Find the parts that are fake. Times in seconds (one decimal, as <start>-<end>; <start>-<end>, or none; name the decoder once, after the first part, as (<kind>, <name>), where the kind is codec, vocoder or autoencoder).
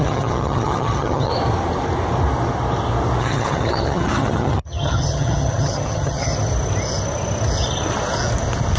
0.0-1.3 (vocoder, HiFi-GAN); 3.2-6.3